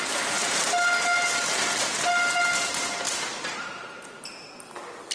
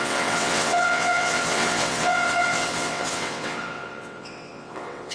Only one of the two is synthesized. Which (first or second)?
second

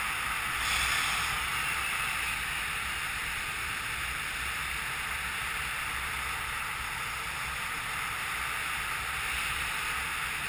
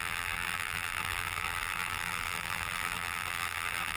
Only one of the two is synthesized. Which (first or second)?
second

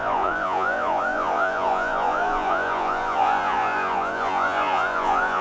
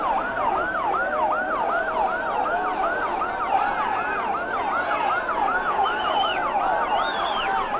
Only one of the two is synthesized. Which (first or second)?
first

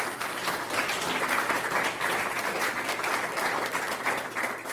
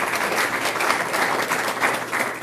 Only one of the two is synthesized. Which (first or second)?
first